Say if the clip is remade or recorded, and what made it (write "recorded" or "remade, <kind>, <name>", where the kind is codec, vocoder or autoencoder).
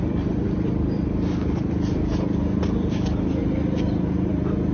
remade, vocoder, BigVGAN v2